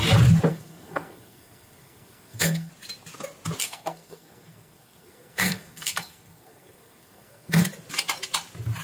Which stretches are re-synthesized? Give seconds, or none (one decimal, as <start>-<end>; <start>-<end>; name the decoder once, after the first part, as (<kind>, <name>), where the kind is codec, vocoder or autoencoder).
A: 0.5-2.7 (codec, SNAC); 3.6-7.6